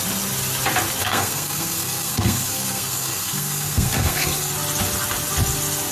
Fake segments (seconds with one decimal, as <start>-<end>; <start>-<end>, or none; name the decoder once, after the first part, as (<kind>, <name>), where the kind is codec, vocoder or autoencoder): 1.0-4.5 (codec, SNAC)